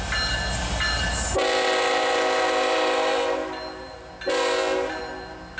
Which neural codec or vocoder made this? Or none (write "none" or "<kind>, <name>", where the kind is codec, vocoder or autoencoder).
none